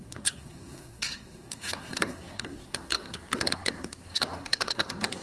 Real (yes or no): no